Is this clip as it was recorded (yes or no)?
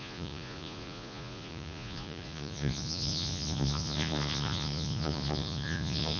no